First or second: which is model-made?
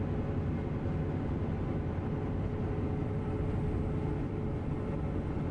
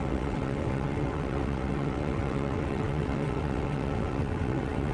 second